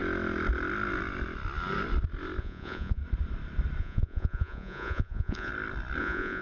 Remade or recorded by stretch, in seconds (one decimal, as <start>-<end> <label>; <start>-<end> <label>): 0.0-2.4 recorded; 2.4-3.0 remade; 3.0-3.8 recorded; 3.8-5.5 remade; 5.5-6.0 recorded; 6.0-6.4 remade